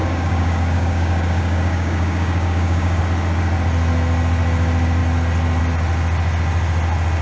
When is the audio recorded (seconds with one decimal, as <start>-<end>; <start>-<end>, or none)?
3.0-7.2